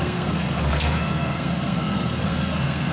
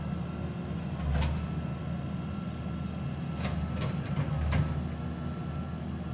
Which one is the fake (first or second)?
first